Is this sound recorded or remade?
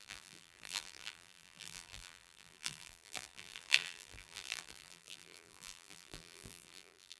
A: remade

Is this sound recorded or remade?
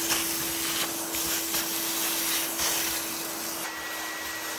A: recorded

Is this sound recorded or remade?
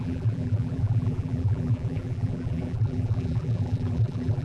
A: remade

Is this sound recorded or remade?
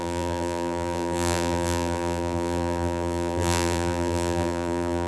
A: remade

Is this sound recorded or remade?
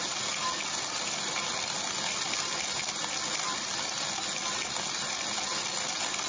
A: recorded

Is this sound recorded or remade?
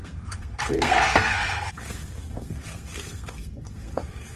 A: remade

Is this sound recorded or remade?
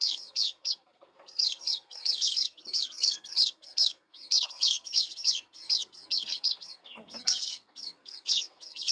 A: remade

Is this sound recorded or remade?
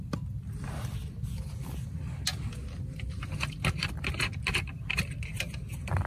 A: recorded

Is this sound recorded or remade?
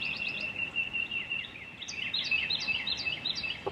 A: recorded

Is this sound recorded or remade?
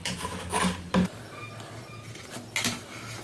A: recorded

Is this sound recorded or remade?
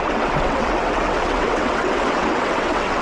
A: remade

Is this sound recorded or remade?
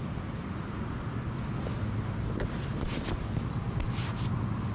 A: recorded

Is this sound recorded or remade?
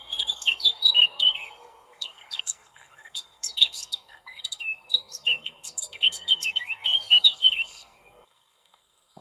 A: remade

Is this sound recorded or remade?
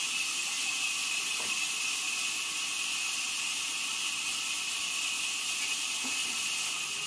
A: recorded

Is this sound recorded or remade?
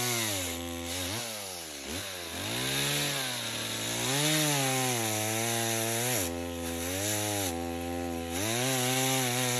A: recorded